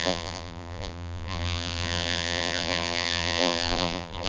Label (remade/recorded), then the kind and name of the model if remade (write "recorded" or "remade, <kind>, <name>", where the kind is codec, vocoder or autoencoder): remade, vocoder, BigVGAN v2